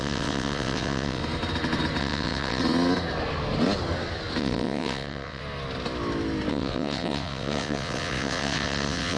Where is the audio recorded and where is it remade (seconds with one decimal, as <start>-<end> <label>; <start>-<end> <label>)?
0.0-1.2 remade; 1.2-2.0 recorded; 2.0-2.6 remade; 2.6-4.4 recorded; 4.4-5.4 remade; 5.4-6.5 recorded; 6.5-9.2 remade